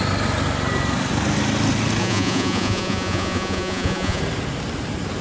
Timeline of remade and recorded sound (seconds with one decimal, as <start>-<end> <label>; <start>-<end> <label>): 0.0-2.0 recorded; 2.0-4.2 remade; 4.2-5.2 recorded